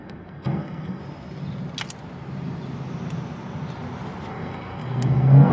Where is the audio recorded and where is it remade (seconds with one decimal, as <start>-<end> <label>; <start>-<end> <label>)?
0.0-1.0 remade; 1.0-4.3 recorded; 4.3-5.5 remade